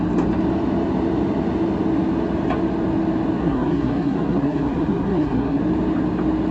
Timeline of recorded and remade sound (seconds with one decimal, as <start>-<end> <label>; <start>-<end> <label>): 0.0-3.4 recorded; 3.4-5.6 remade; 5.6-6.5 recorded

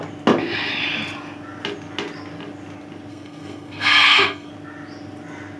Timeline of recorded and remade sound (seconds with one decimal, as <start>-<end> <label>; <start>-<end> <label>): 0.0-3.1 recorded; 3.1-4.5 remade; 4.5-5.6 recorded